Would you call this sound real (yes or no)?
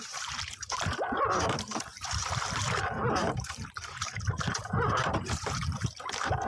no